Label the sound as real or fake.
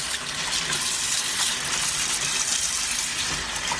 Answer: real